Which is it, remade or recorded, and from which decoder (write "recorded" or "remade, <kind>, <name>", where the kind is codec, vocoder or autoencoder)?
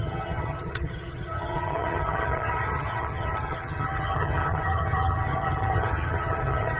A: remade, vocoder, HiFi-GAN